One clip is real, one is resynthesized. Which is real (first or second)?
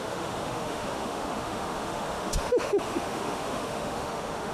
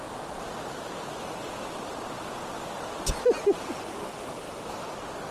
second